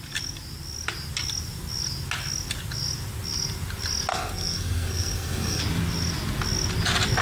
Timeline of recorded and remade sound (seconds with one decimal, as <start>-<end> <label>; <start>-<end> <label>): 0.0-4.1 recorded; 4.1-5.6 remade; 5.6-7.2 recorded